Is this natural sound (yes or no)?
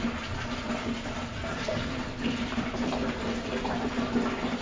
yes